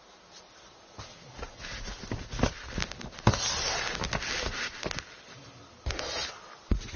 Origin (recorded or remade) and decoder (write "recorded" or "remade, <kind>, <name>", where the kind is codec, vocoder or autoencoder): recorded